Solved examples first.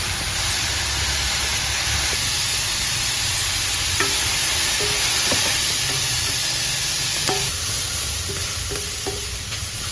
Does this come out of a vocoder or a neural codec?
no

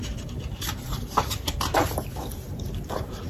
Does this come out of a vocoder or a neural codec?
yes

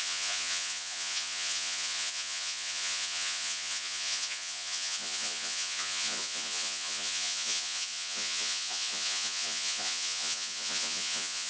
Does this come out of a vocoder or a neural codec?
yes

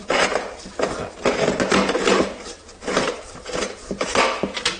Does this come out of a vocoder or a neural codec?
no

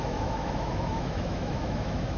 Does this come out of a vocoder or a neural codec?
yes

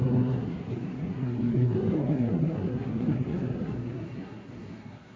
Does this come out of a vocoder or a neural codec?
yes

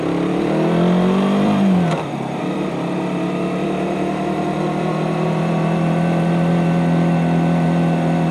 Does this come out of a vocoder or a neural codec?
yes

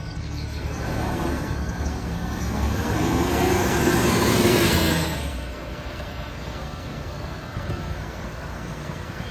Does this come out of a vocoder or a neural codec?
yes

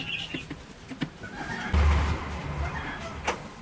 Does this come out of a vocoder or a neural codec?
no